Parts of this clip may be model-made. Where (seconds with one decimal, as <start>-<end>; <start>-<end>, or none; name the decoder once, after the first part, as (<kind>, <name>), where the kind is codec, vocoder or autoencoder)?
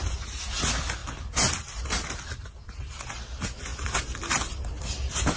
none